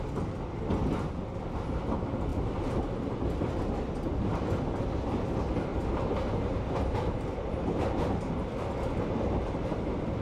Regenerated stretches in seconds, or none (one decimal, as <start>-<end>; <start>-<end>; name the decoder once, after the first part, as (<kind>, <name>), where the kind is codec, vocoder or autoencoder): 5.7-8.4 (vocoder, BigVGAN v2)